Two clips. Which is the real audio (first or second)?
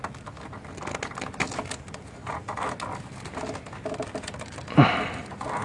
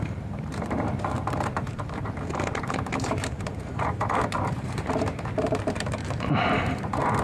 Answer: first